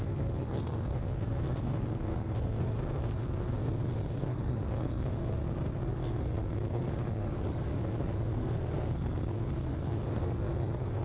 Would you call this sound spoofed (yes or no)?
yes